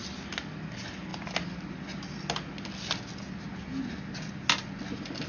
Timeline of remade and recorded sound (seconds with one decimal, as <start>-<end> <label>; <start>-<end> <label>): 0.0-5.3 recorded